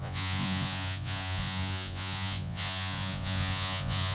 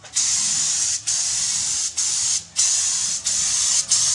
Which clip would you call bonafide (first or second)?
second